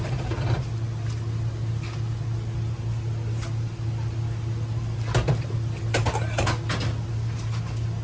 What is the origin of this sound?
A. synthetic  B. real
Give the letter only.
B